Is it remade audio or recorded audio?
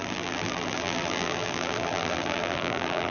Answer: remade